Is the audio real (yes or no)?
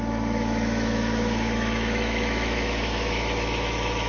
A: no